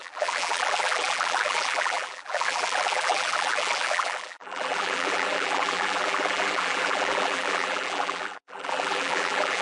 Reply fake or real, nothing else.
fake